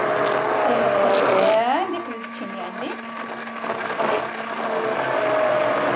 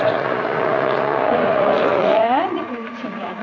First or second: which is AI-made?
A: second